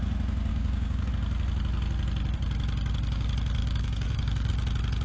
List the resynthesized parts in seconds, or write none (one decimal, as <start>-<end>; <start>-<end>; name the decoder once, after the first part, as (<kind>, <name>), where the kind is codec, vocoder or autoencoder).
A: 0.5-1.1 (codec, DAC); 3.6-4.5